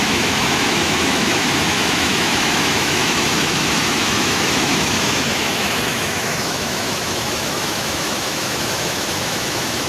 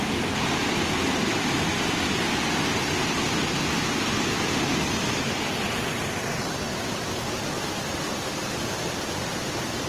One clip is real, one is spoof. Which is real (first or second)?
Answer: second